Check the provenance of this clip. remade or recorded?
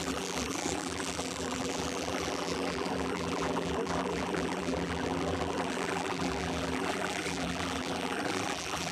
remade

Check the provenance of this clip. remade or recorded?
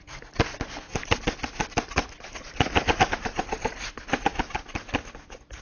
recorded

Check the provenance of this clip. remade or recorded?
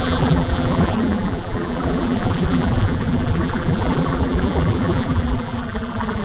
remade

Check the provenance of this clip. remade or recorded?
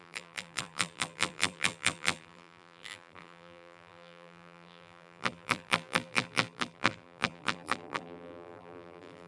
remade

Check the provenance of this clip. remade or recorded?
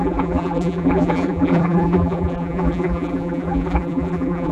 remade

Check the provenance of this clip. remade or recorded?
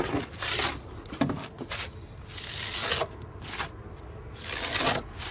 recorded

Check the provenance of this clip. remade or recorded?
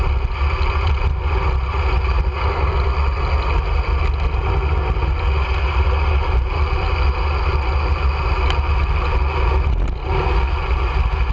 recorded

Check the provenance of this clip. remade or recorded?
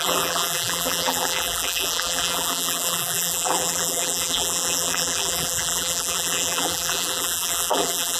remade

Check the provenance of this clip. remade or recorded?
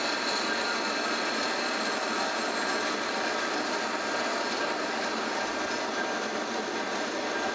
recorded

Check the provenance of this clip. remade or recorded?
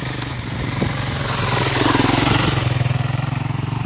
remade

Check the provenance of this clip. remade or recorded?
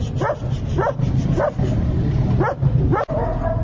recorded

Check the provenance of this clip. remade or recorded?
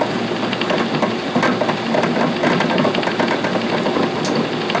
recorded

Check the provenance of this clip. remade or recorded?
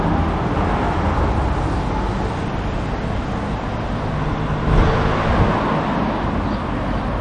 recorded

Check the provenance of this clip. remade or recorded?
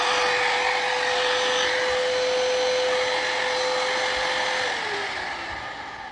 recorded